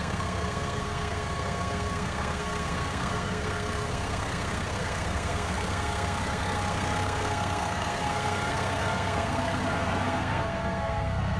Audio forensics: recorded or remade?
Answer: remade